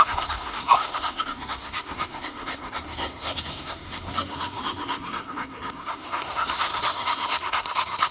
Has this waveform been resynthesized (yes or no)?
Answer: yes